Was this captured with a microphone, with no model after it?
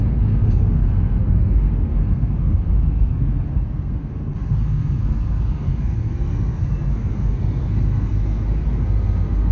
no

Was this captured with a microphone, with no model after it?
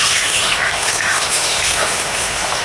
no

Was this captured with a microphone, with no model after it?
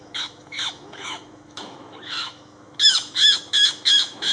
no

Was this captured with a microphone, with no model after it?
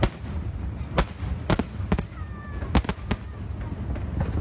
yes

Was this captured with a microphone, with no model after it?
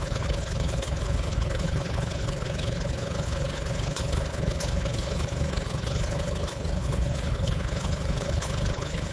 no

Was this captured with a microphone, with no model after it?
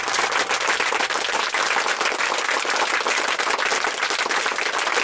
yes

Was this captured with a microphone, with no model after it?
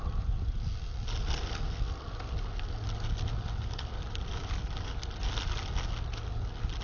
yes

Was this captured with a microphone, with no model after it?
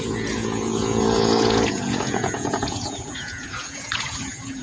no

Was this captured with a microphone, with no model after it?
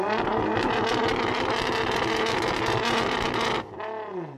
yes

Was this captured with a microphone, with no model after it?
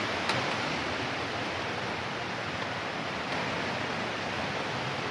yes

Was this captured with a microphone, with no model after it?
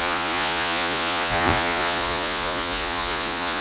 no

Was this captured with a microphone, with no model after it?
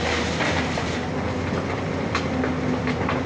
yes